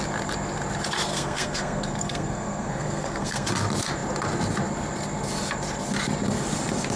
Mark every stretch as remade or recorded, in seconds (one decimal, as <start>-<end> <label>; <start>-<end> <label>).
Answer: 0.0-1.1 recorded; 1.1-3.5 remade; 3.5-7.0 recorded